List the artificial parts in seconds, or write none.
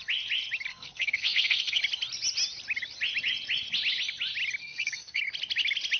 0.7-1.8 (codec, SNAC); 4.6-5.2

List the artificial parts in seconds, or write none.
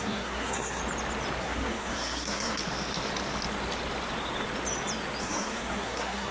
0.0-0.8 (codec, SNAC); 1.4-2.6; 5.2-6.3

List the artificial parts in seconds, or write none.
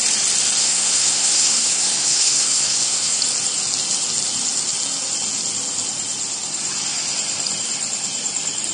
0.6-3.2 (codec, SNAC)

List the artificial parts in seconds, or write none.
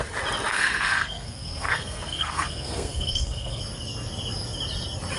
0.5-3.6 (codec, SNAC)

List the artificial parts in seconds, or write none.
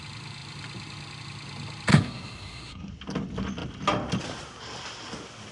1.9-2.9 (codec, SNAC)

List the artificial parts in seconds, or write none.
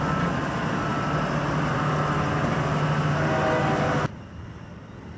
none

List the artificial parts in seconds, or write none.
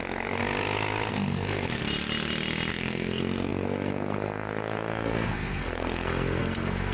0.0-0.4 (codec, SNAC); 1.1-1.8; 2.7-6.9